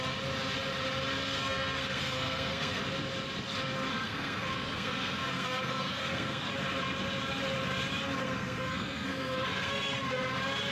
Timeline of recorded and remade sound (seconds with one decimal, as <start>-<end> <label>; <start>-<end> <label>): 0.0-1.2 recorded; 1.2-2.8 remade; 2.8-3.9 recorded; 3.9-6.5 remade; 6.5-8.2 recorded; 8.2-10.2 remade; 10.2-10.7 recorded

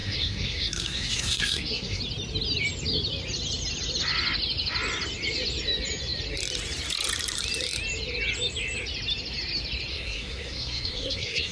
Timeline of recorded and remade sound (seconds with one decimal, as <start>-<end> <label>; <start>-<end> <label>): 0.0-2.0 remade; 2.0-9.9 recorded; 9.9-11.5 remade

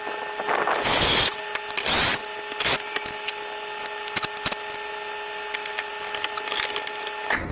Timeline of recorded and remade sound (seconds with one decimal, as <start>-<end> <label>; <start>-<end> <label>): 0.0-7.5 recorded

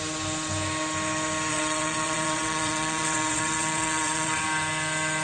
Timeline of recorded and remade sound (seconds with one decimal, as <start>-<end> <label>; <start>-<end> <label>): 0.0-1.5 recorded; 1.5-4.4 remade; 4.4-5.2 recorded